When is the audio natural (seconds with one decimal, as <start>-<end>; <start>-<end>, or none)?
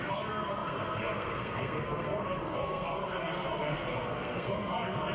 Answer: none